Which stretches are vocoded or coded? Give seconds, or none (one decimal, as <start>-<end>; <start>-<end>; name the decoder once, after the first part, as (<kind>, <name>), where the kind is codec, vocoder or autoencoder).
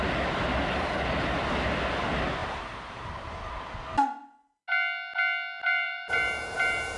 2.4-3.5 (vocoder, BigVGAN v2); 5.6-7.0